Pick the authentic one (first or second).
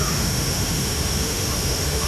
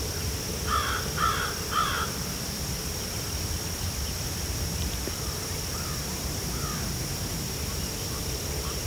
second